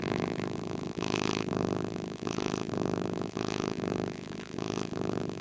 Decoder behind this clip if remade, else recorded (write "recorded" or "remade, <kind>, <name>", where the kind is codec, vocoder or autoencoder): remade, vocoder, BigVGAN v2